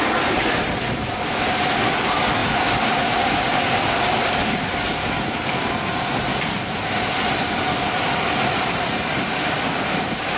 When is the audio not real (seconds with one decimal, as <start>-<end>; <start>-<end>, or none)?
0.0-6.3; 8.6-10.4